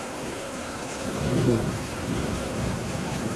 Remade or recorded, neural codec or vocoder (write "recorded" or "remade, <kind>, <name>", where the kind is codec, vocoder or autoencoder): remade, codec, SNAC